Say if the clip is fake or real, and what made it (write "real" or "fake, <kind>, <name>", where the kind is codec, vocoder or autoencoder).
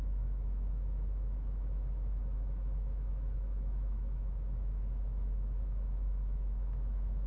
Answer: fake, autoencoder, DAC-VAE